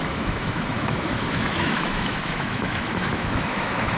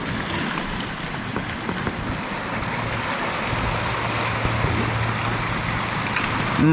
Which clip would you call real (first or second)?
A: second